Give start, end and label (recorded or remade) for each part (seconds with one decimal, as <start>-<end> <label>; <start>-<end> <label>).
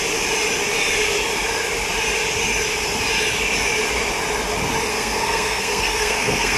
0.0-4.9 recorded; 4.9-6.6 remade